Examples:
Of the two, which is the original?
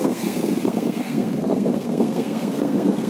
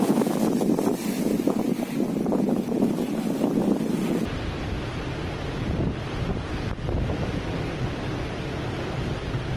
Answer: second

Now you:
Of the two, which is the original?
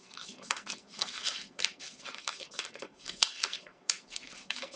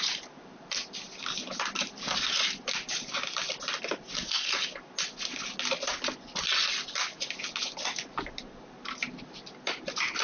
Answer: second